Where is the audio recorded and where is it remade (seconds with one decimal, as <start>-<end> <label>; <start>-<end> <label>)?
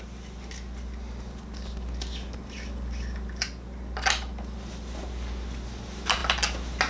0.0-6.9 recorded